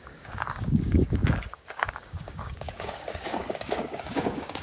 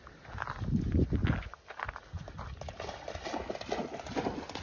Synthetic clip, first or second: first